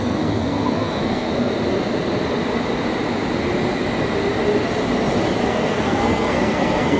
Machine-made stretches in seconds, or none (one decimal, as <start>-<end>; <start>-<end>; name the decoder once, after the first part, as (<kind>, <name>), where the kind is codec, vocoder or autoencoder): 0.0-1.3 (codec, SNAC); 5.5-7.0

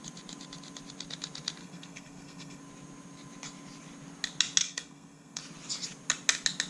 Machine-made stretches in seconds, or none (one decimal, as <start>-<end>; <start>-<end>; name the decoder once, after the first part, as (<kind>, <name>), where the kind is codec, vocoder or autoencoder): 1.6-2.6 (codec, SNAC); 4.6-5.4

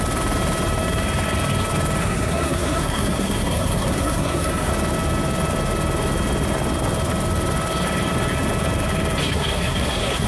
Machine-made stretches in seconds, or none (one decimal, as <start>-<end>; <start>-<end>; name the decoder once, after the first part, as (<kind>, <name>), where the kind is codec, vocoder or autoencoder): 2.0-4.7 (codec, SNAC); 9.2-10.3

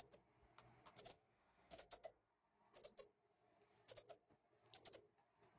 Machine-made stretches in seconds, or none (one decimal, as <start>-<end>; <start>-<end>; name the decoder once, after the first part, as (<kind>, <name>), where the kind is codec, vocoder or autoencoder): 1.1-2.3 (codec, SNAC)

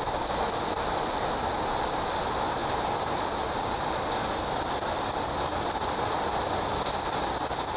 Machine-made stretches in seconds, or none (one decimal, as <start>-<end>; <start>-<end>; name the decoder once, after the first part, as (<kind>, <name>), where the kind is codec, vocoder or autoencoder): none

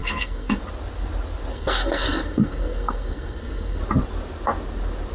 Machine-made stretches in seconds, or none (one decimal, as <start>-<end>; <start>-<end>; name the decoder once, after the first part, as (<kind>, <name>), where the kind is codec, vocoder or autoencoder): 0.0-0.6 (codec, SNAC); 1.5-3.8

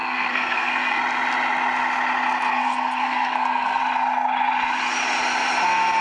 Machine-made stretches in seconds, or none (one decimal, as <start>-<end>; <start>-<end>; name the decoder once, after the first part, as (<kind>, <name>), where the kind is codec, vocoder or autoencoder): 0.0-1.0 (codec, SNAC); 2.5-3.8

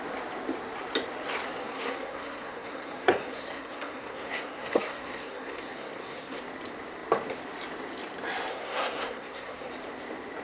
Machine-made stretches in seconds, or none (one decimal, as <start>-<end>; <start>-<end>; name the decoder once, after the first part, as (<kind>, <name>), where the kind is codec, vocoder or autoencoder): 1.6-6.4 (codec, SNAC); 8.5-9.7